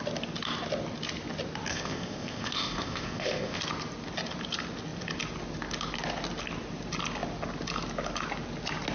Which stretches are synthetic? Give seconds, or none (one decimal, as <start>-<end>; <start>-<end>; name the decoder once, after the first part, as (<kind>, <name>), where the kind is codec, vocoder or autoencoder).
1.7-3.6 (codec, ZipCodec)